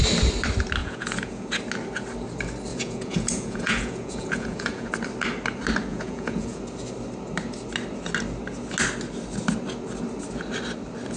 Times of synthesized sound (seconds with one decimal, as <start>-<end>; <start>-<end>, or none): 0.8-1.6; 2.7-4.9; 5.9-6.6